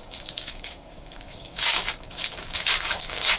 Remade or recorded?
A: remade